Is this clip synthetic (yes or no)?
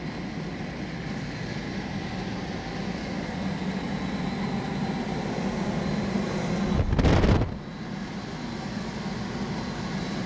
no